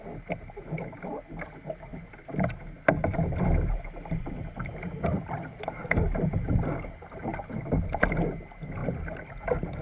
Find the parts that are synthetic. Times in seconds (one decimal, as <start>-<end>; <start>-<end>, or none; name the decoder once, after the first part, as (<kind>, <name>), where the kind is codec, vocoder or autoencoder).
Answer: none